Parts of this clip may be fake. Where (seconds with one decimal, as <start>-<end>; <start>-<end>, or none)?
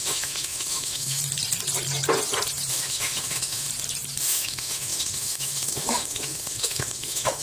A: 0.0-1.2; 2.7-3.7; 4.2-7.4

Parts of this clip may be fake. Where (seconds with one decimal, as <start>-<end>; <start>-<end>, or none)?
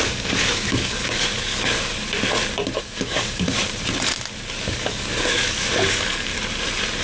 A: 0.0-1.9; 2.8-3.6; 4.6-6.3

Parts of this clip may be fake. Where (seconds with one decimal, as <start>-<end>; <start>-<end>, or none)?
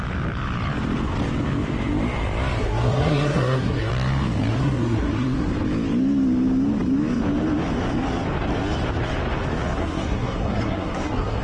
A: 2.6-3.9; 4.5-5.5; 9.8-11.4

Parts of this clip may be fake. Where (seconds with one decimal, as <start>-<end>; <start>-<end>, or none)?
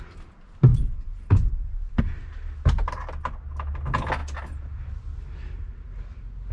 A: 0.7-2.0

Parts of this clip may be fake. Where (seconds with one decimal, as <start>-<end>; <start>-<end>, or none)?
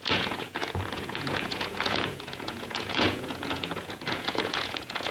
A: 0.0-5.1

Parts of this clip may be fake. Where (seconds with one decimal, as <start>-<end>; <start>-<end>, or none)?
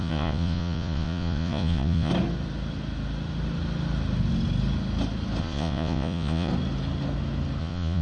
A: 0.0-2.1; 5.4-6.5; 7.6-8.0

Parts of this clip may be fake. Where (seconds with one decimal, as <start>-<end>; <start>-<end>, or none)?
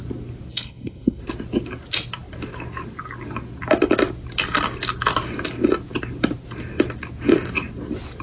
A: 0.5-1.2